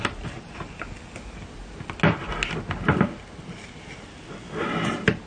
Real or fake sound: real